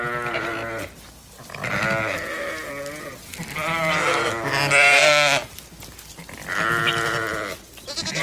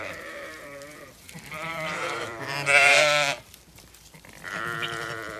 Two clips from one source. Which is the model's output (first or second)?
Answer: second